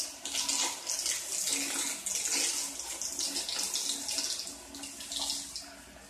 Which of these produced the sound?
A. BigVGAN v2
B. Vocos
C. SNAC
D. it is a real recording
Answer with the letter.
D